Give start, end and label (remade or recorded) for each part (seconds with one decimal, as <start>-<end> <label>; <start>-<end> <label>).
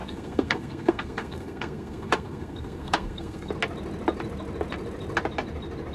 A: 0.0-3.5 remade; 3.5-5.9 recorded